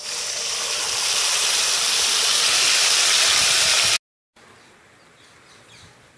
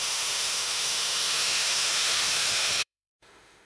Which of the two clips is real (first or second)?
first